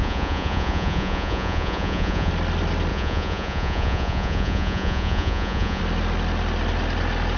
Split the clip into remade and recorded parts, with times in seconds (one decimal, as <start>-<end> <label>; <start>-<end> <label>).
0.0-2.3 remade; 2.3-2.9 recorded; 2.9-5.8 remade; 5.8-7.4 recorded